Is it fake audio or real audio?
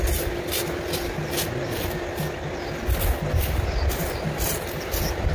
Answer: real